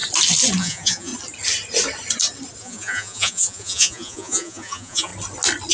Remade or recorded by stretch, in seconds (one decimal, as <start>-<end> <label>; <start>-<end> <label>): 0.0-0.6 recorded; 0.6-1.1 remade; 1.1-2.6 recorded; 2.6-5.1 remade; 5.1-5.7 recorded